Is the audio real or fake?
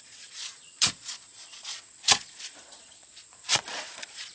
fake